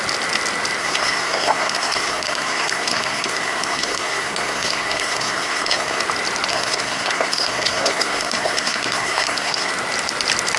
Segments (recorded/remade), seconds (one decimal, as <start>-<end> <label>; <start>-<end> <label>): 0.0-0.8 recorded; 0.8-6.0 remade; 6.0-6.5 recorded; 6.5-9.7 remade; 9.7-10.6 recorded